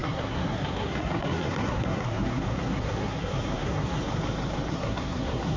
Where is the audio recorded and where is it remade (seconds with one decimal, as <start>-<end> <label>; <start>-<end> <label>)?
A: 0.0-4.0 remade; 4.0-4.7 recorded; 4.7-5.6 remade